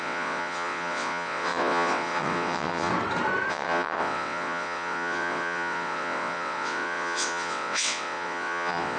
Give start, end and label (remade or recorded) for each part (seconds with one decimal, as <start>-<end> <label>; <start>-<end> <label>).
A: 0.0-2.9 remade; 2.9-3.5 recorded; 3.5-9.0 remade